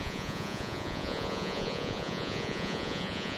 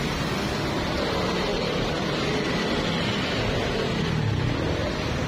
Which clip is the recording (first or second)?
second